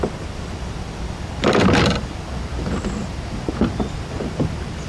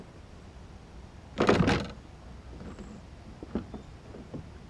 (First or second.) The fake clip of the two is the first